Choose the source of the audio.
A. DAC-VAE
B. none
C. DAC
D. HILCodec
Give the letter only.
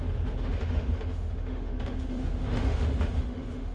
A